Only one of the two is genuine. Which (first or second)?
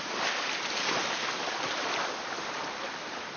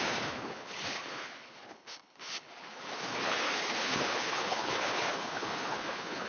first